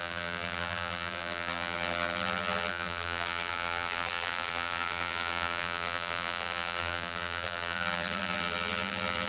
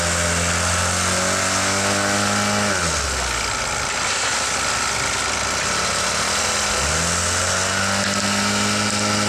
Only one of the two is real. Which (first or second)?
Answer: second